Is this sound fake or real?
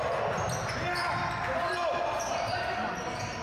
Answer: real